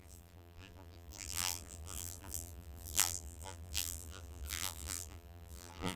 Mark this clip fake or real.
fake